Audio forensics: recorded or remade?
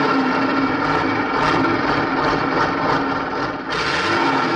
recorded